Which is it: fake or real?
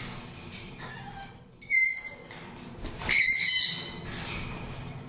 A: real